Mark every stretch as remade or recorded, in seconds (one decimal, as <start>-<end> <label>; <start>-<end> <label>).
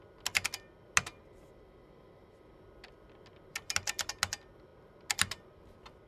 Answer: 0.0-6.1 recorded